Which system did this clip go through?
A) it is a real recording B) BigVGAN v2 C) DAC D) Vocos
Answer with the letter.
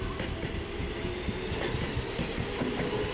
A